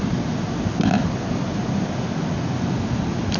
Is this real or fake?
real